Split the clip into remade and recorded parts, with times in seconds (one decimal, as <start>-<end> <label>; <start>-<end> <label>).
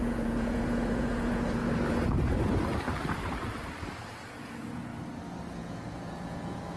0.0-1.6 remade; 1.6-4.3 recorded; 4.3-4.9 remade; 4.9-5.5 recorded; 5.5-6.8 remade